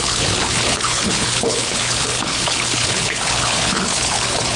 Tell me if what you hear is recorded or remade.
remade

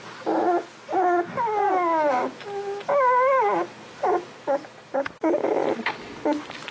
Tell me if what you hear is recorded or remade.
recorded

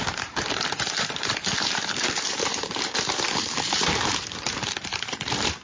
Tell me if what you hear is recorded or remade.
remade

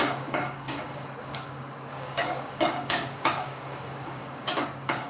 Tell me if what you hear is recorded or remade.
remade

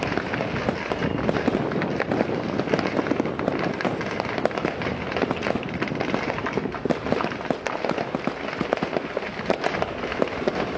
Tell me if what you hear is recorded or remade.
recorded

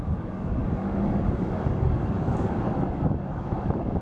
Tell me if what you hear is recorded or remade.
remade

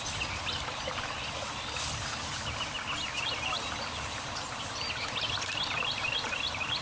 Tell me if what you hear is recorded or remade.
recorded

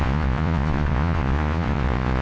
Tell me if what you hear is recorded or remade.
remade